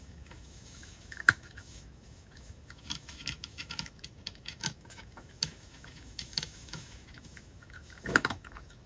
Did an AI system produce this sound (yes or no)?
yes